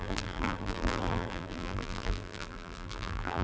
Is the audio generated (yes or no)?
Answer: yes